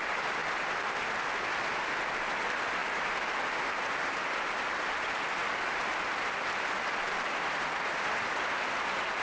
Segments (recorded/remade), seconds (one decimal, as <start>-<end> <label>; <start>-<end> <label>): 0.0-9.2 recorded